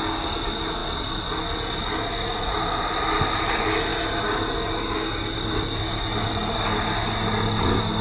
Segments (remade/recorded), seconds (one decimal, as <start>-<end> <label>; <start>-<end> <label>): 0.0-8.0 recorded